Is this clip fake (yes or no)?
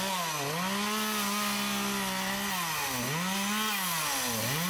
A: no